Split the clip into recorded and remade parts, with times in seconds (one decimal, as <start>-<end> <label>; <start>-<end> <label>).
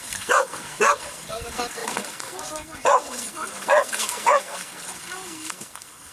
0.0-6.1 remade